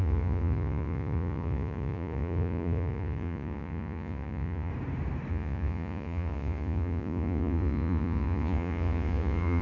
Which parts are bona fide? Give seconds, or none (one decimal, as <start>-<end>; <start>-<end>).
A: 4.7-5.3